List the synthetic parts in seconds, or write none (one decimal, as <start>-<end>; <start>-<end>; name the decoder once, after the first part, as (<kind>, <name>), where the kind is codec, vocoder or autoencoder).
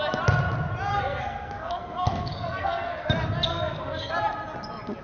0.9-3.1 (codec, SNAC); 3.5-4.1